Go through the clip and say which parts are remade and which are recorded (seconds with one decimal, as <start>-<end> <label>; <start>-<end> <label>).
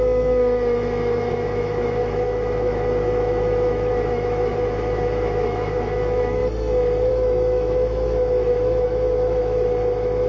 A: 0.0-6.4 remade; 6.4-7.1 recorded; 7.1-10.3 remade